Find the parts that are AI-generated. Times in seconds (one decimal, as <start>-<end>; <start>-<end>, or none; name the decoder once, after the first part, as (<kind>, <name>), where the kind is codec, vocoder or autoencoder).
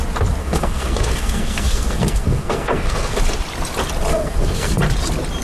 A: 0.4-3.2 (codec, SNAC); 4.1-4.8